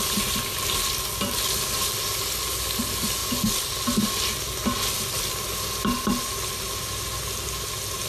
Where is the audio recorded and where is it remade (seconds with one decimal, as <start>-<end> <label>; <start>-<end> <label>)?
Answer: 0.0-8.1 recorded